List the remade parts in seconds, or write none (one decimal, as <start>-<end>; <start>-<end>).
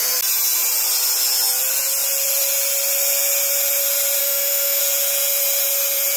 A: 4.2-4.8